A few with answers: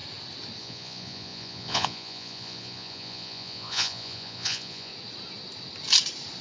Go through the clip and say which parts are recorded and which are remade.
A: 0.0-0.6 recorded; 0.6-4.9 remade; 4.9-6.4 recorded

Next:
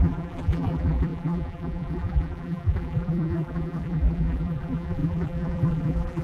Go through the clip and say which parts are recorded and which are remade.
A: 0.0-6.2 remade

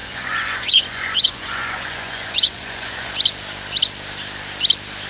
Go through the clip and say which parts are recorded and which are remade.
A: 0.0-3.1 remade; 3.1-5.1 recorded

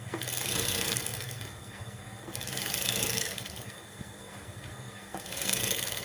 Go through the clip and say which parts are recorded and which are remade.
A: 0.0-6.0 remade